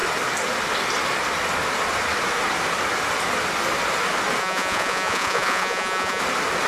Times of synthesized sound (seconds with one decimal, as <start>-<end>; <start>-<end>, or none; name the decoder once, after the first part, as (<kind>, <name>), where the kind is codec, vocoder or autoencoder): 4.4-6.2 (vocoder, Vocos)

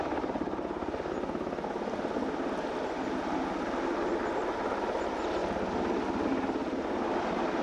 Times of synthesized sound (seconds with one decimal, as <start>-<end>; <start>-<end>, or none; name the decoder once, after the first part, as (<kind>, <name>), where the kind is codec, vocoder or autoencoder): none

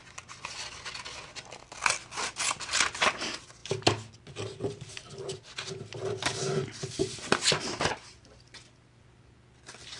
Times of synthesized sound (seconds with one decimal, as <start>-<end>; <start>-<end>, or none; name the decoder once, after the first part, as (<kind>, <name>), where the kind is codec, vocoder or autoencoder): none

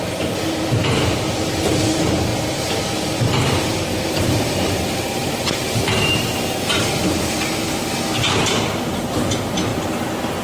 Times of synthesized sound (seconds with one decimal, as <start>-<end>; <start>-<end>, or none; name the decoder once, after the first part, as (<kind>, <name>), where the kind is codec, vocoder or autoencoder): 0.0-9.7 (vocoder, BigVGAN v2)

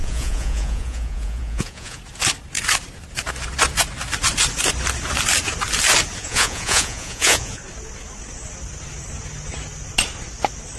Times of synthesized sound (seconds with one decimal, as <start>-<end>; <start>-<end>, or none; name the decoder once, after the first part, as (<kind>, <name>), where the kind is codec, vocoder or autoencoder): 0.0-2.0 (vocoder, Vocos); 6.2-7.6